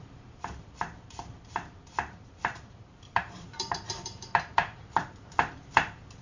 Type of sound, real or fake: fake